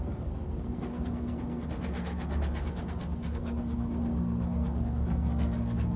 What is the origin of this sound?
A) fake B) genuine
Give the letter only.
A